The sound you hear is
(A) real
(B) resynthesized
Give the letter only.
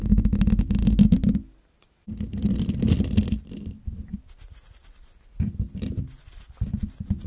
A